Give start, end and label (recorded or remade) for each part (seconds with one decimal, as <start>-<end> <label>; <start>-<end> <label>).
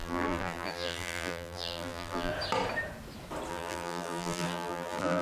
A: 0.0-2.3 remade; 2.3-3.5 recorded; 3.5-5.2 remade